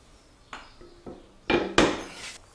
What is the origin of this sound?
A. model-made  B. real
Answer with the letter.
B